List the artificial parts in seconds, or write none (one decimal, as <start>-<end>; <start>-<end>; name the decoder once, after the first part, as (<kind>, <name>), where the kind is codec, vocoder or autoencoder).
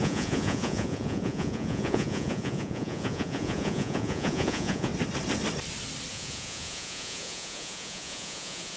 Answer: 0.0-4.9 (vocoder, Vocos); 6.1-8.8